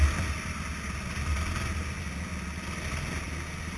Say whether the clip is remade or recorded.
recorded